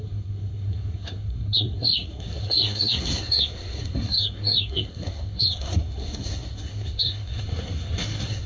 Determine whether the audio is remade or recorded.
remade